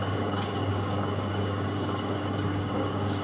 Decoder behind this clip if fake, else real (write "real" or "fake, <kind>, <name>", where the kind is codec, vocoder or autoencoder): fake, codec, DAC